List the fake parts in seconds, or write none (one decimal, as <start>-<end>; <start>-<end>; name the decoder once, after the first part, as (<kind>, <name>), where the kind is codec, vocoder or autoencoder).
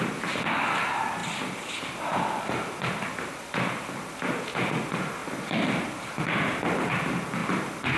none